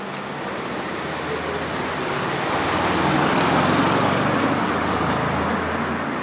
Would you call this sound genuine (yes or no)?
yes